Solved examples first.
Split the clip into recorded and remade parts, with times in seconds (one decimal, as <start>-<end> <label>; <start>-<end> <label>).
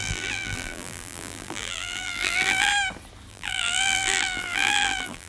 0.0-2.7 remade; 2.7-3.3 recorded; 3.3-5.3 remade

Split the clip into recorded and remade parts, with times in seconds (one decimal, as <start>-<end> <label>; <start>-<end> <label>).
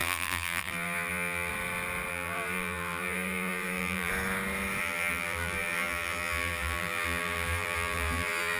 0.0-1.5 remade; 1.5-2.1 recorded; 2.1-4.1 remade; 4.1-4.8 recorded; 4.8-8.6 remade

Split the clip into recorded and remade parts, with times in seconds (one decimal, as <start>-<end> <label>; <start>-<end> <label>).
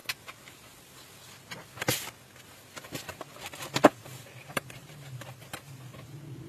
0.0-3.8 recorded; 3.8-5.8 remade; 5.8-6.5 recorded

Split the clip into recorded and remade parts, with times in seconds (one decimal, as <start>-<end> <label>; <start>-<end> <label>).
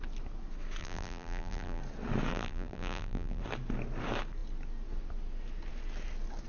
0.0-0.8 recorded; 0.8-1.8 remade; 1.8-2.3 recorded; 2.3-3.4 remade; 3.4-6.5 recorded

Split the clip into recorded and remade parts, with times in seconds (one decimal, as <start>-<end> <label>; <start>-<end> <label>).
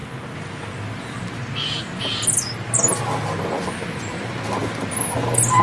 0.0-1.4 remade; 1.4-4.6 recorded; 4.6-5.6 remade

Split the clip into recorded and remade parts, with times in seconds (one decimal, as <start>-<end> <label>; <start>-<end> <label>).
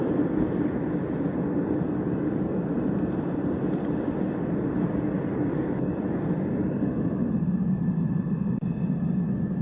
0.0-9.6 recorded